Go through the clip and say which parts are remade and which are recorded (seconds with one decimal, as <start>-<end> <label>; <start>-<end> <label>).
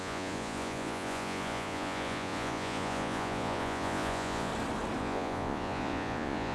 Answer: 0.0-4.5 remade; 4.5-5.0 recorded; 5.0-6.5 remade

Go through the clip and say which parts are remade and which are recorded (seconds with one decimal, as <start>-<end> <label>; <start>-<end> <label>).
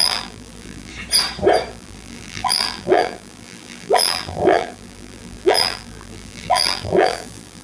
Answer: 0.0-0.9 remade; 0.9-1.7 recorded; 1.7-7.6 remade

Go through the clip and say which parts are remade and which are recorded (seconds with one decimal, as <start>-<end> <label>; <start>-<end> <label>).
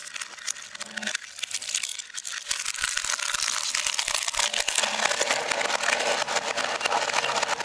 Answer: 0.0-7.6 recorded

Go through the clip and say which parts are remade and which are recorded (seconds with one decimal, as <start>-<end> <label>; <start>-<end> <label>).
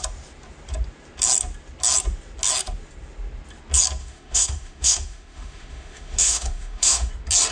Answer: 0.0-4.0 recorded; 4.0-7.1 remade; 7.1-7.5 recorded